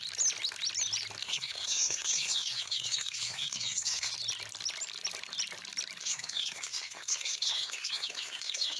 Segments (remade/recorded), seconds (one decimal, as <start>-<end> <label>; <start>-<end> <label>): 0.0-1.2 recorded; 1.2-4.1 remade; 4.1-6.0 recorded; 6.0-8.8 remade